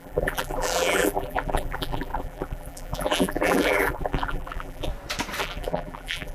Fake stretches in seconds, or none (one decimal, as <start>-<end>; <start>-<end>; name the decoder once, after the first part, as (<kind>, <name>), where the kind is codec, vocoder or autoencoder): 0.0-4.9 (vocoder, BigVGAN v2); 5.4-6.3